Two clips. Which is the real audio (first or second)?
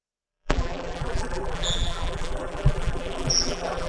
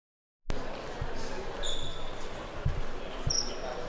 second